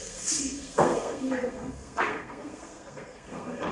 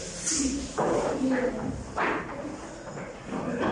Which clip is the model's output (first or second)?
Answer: first